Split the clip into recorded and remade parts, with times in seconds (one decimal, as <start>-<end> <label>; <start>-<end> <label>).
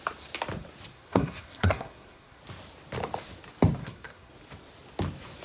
0.0-0.9 recorded; 0.9-2.4 remade; 2.4-3.8 recorded; 3.8-4.3 remade; 4.3-5.4 recorded